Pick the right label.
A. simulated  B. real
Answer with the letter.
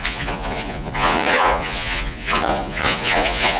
A